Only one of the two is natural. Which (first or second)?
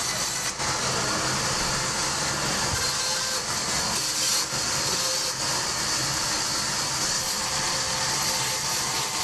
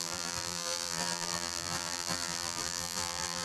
first